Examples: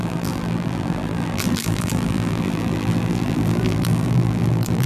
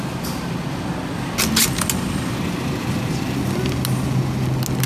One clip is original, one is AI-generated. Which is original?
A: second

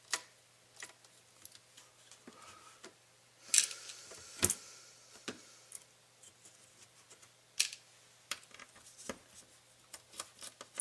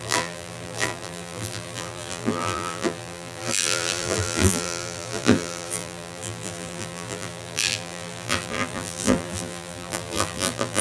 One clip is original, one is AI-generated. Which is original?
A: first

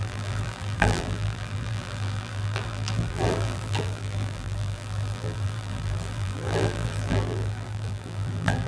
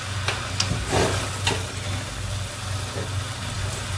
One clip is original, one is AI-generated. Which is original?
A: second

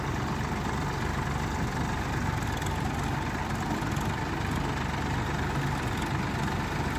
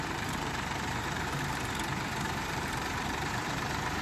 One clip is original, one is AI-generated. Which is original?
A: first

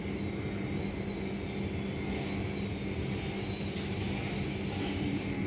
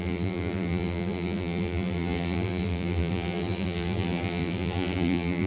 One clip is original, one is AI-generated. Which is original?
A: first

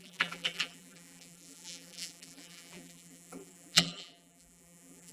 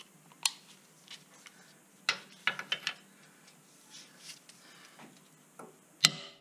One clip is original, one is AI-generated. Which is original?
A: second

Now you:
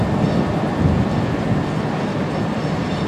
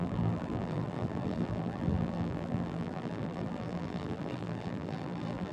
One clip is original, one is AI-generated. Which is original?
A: first